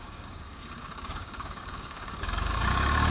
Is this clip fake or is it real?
fake